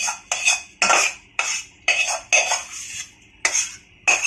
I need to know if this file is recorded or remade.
recorded